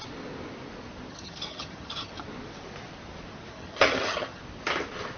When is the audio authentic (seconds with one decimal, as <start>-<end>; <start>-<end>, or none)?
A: 0.0-1.1; 2.1-3.5; 4.4-5.2